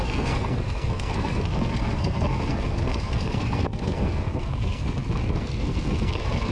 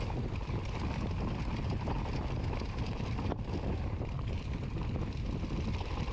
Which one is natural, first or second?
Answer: second